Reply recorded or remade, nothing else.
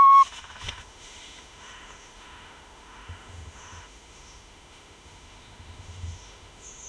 remade